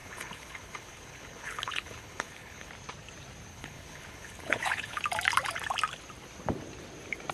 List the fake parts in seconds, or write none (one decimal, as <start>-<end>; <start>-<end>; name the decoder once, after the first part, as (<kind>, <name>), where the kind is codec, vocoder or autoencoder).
0.0-2.7 (codec, HILCodec); 3.5-5.0